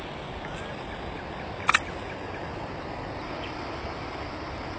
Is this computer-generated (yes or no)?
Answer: no